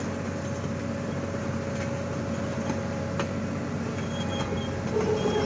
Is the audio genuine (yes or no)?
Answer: yes